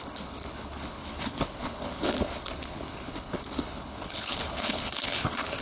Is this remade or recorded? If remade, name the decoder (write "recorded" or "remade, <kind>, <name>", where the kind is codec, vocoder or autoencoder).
remade, codec, HILCodec